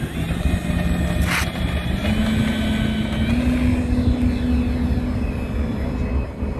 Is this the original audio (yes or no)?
yes